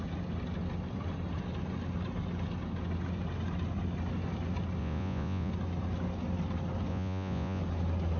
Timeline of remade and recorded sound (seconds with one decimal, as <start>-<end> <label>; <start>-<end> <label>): 0.0-4.8 recorded; 4.8-5.5 remade; 5.5-6.9 recorded; 6.9-7.6 remade; 7.6-8.2 recorded